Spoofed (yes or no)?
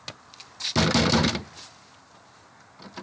no